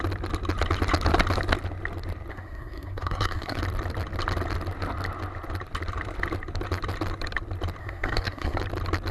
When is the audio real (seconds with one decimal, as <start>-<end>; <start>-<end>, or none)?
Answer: 0.0-2.3; 3.6-7.8; 8.6-9.1